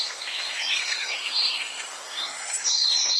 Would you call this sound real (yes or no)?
no